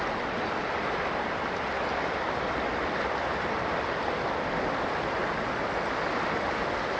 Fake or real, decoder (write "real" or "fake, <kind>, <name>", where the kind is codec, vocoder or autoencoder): real